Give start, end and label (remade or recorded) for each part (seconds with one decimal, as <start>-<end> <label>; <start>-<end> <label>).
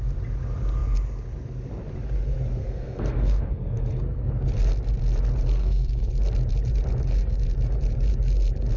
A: 0.0-2.6 recorded; 2.6-4.3 remade; 4.3-5.6 recorded; 5.6-6.1 remade; 6.1-8.8 recorded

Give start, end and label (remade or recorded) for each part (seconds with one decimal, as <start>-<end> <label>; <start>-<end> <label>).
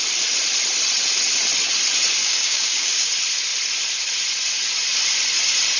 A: 0.0-2.2 recorded; 2.2-3.1 remade; 3.1-5.8 recorded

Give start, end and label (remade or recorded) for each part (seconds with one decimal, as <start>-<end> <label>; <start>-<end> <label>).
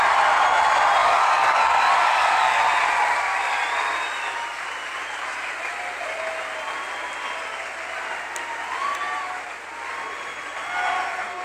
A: 0.0-1.0 recorded; 1.0-2.6 remade; 2.6-11.4 recorded